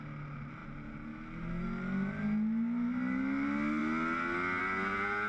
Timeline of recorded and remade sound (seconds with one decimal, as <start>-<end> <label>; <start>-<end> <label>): 0.0-5.3 recorded